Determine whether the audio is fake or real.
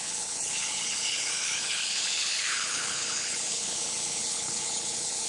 fake